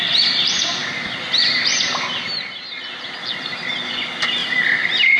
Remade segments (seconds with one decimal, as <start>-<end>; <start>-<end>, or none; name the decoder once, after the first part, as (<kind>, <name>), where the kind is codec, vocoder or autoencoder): 4.4-5.2 (vocoder, BigVGAN v2)